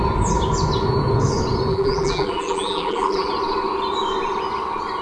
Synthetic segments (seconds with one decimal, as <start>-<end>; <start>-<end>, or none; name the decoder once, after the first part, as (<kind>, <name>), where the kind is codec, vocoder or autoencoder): 1.7-3.3 (vocoder, BigVGAN v2)